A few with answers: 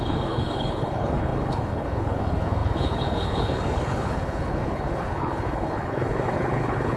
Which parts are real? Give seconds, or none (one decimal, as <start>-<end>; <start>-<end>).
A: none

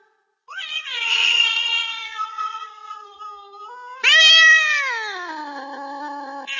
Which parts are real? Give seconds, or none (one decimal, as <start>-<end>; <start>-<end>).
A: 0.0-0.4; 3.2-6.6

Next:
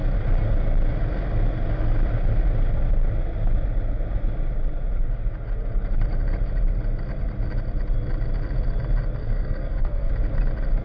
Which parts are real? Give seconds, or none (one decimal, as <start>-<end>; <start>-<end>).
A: 0.0-9.2; 10.1-10.8